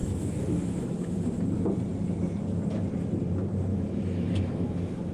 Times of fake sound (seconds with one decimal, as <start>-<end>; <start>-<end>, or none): 0.0-1.4; 3.7-5.1